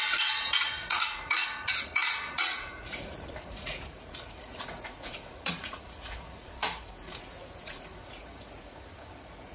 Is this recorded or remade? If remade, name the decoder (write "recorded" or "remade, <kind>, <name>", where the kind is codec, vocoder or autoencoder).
remade, vocoder, Vocos